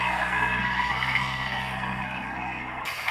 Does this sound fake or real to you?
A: fake